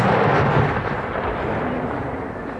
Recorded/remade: recorded